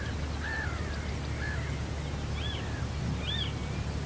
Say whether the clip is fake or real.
real